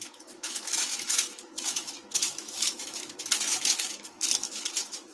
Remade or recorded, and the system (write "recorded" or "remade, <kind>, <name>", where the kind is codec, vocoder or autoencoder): remade, autoencoder, DAC-VAE